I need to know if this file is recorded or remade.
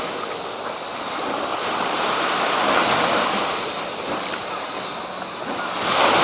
recorded